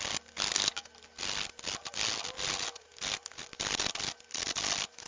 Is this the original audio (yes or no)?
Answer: yes